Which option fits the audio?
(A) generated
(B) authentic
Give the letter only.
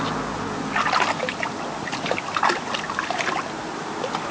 B